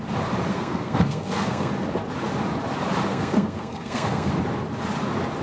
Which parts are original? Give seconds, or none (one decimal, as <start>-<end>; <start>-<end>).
0.0-0.5; 1.7-3.1; 4.3-5.4